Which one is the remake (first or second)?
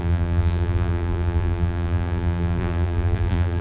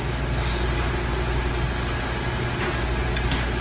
first